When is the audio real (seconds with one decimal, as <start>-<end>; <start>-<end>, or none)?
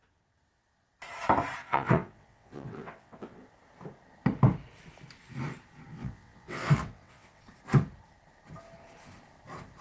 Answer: 0.0-1.6; 3.4-5.9; 7.4-9.8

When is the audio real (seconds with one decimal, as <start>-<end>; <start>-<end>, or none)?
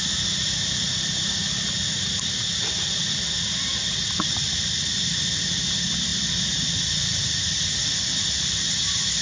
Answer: 0.0-9.2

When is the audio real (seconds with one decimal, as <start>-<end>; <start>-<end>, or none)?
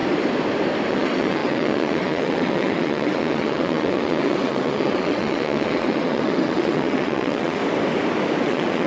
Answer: 0.0-0.9; 7.6-8.4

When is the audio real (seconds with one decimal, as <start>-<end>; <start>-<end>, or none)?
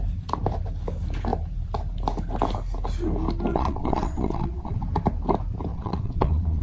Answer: 0.0-3.5; 4.8-5.7